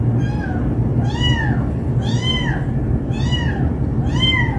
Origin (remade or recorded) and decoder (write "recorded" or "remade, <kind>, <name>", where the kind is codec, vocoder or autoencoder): recorded